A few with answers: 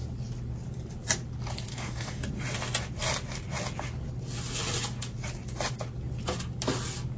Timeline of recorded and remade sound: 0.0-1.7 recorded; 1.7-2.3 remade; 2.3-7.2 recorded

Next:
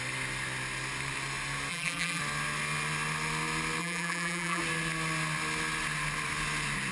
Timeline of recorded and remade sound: 0.0-1.7 recorded; 1.7-2.2 remade; 2.2-3.8 recorded; 3.8-4.6 remade; 4.6-6.9 recorded

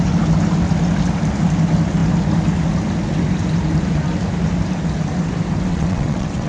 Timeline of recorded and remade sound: 0.0-5.7 recorded; 5.7-6.5 remade

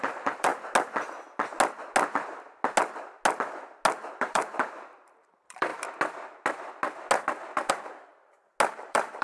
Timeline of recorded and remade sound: 0.0-0.5 remade; 0.5-4.2 recorded; 4.2-5.7 remade; 5.7-7.7 recorded; 7.7-8.1 remade; 8.1-8.7 recorded; 8.7-9.2 remade

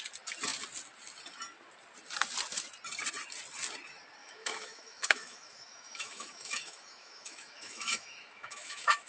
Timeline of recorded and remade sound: 0.0-4.2 recorded; 4.2-9.1 remade

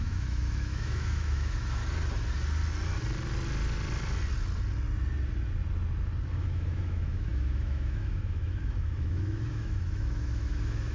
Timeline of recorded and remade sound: 0.0-1.8 remade; 1.8-6.3 recorded; 6.3-10.9 remade

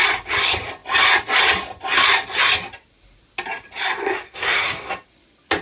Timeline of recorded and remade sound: 0.0-4.0 recorded; 4.0-4.9 remade; 4.9-5.6 recorded

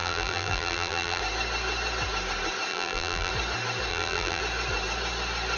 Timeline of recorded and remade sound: 0.0-1.2 remade; 1.2-2.7 recorded; 2.7-3.3 remade; 3.3-3.9 recorded; 3.9-4.4 remade; 4.4-5.6 recorded